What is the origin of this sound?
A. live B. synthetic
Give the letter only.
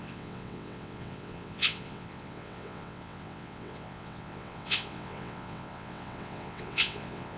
B